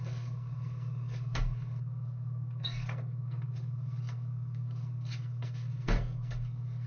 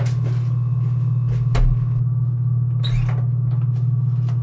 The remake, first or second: first